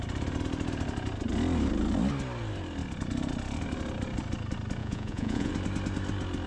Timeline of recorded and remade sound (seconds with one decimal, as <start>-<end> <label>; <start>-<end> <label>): 0.0-4.8 recorded; 4.8-5.5 remade; 5.5-6.5 recorded